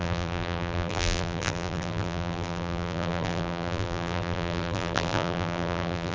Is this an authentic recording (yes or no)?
no